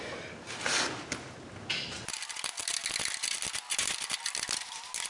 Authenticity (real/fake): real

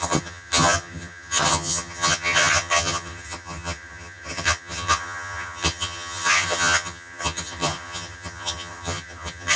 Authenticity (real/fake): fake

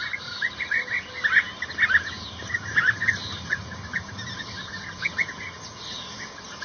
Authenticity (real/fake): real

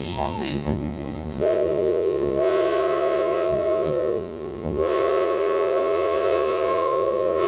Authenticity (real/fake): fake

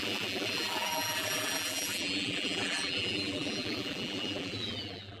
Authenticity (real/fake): fake